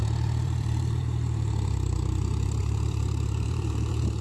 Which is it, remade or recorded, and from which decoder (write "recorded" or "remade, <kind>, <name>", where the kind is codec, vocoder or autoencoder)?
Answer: remade, vocoder, BigVGAN v2